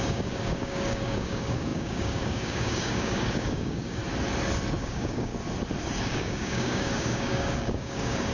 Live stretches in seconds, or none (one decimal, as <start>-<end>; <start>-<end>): 4.0-4.8; 5.3-6.0